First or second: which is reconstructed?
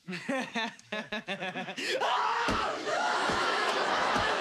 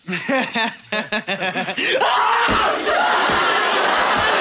first